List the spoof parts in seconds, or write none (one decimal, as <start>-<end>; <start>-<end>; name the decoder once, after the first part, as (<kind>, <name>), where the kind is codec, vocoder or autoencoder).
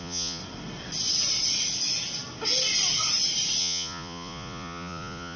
0.0-0.4 (vocoder, Vocos); 3.6-5.4